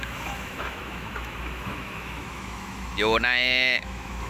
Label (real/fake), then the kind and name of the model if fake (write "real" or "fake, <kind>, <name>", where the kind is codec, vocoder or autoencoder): fake, autoencoder, DAC-VAE